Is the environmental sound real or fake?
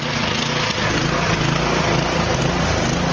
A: real